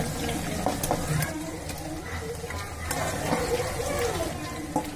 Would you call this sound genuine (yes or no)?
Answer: yes